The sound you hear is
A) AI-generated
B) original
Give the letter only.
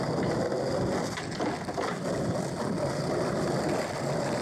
B